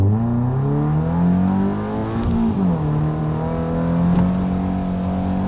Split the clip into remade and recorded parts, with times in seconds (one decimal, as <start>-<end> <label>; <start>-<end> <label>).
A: 0.0-5.5 recorded